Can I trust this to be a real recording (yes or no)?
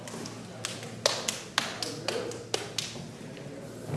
yes